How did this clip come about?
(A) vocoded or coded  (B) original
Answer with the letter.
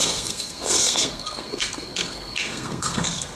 A